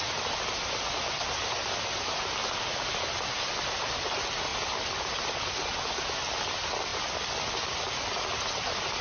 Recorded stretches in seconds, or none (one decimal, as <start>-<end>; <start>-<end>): 0.0-9.0